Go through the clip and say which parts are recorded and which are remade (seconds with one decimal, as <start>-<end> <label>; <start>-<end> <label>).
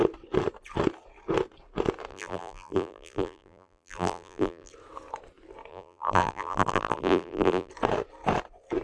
0.0-2.1 recorded; 2.1-4.7 remade; 4.7-5.7 recorded; 5.7-7.7 remade; 7.7-8.8 recorded